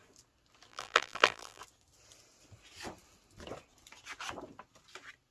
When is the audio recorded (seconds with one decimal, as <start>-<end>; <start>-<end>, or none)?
0.0-0.7; 1.6-5.3